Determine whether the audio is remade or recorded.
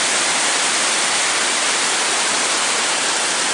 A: recorded